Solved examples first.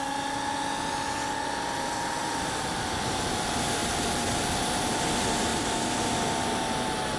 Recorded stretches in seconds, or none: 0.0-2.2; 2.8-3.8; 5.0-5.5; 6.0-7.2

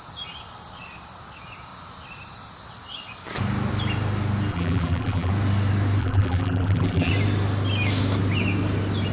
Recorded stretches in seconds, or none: 0.0-4.5; 5.3-6.0; 7.1-9.1

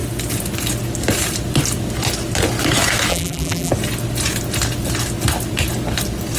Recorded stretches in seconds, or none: 0.0-3.1; 3.7-6.4

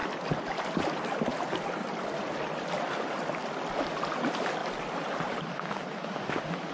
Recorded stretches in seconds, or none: 2.8-3.4; 4.1-4.6; 5.9-6.7